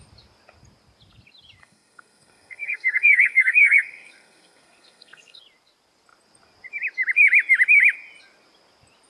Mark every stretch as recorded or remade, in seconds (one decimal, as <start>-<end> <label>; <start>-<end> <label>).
0.0-1.6 recorded; 1.6-5.4 remade; 5.4-9.1 recorded